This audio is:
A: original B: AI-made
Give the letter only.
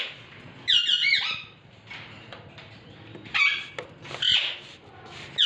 A